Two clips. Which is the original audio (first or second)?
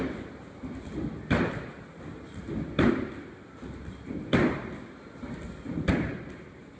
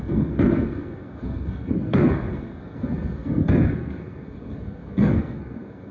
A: first